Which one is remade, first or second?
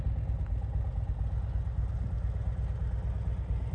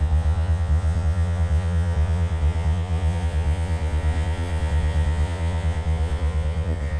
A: second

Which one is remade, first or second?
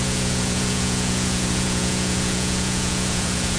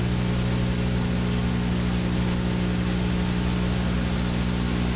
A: first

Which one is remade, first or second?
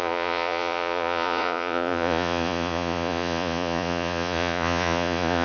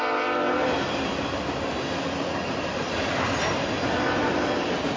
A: first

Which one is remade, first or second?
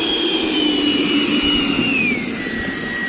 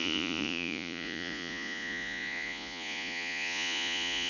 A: second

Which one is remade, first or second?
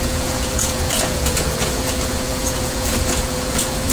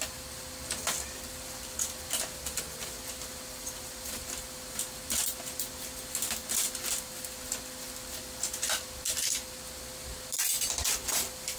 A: first